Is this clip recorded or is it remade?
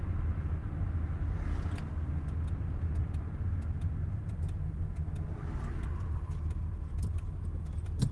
recorded